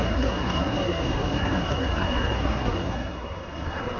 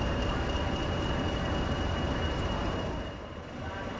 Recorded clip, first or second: second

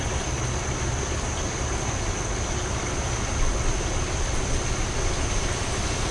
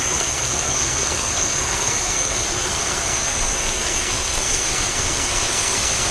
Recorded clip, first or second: first